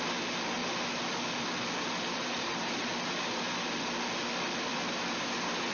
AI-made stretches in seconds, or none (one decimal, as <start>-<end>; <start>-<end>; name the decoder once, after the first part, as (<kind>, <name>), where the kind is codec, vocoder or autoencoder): none